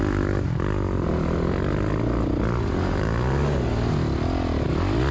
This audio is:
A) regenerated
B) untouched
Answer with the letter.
B